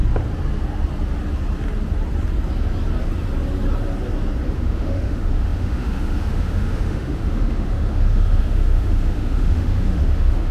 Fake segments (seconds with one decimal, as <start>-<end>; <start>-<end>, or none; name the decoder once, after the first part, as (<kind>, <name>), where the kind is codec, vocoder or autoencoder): 4.5-10.5 (autoencoder, DAC-VAE)